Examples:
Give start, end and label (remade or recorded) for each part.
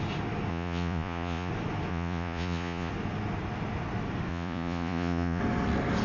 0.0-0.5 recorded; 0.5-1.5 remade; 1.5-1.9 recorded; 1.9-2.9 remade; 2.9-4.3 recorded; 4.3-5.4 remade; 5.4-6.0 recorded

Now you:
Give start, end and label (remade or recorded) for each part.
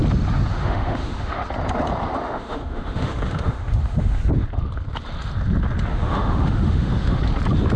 0.0-0.5 recorded; 0.5-1.4 remade; 1.4-2.2 recorded; 2.2-4.2 remade; 4.2-5.9 recorded; 5.9-7.2 remade; 7.2-7.8 recorded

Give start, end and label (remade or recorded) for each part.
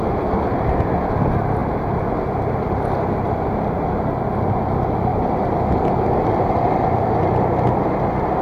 0.0-5.1 recorded; 5.1-5.9 remade; 5.9-8.4 recorded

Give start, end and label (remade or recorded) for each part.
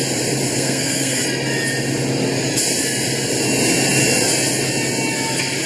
0.0-0.5 recorded; 0.5-1.2 remade; 1.2-5.7 recorded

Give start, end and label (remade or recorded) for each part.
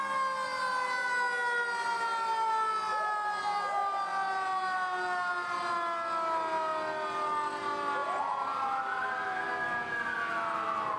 0.0-11.0 recorded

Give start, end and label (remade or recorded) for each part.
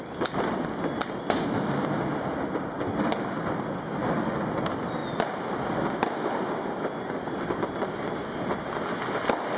0.0-9.6 recorded